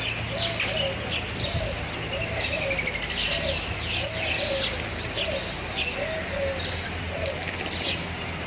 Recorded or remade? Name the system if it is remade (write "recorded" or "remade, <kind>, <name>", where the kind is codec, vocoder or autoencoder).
recorded